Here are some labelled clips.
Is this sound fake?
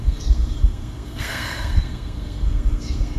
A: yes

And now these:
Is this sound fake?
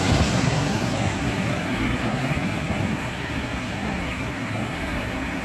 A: yes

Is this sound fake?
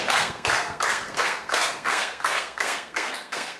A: yes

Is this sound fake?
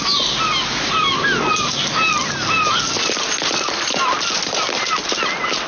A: no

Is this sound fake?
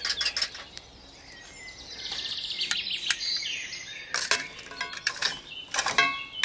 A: no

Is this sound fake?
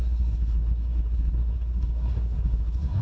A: yes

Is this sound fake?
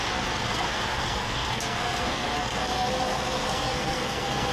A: yes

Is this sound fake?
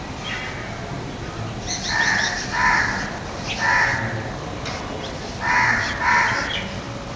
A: no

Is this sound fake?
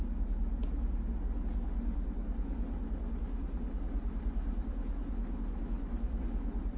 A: no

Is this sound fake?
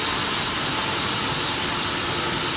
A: yes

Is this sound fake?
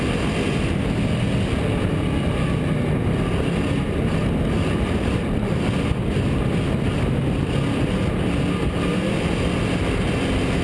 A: no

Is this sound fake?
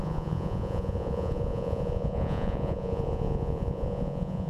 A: yes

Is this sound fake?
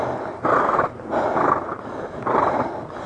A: no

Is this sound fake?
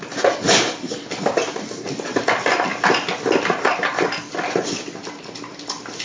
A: no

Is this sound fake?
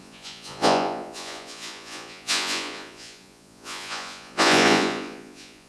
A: yes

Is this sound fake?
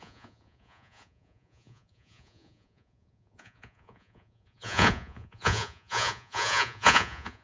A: yes